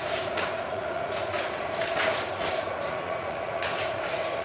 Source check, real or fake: fake